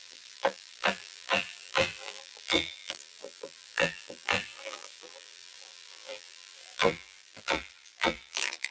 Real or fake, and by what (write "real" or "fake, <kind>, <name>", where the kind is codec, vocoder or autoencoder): fake, vocoder, BigVGAN v2